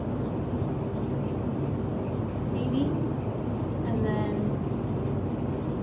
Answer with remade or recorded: recorded